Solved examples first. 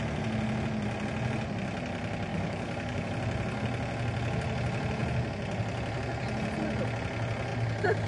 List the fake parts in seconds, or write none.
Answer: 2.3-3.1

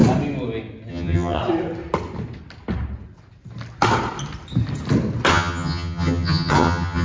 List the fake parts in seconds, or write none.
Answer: 0.9-1.4; 5.3-7.0

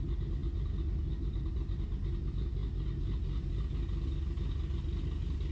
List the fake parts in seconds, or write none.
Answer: none